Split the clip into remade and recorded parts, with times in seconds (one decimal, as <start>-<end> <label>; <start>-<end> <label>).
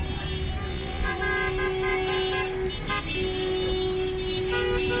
0.0-0.7 recorded; 0.7-1.2 remade; 1.2-5.0 recorded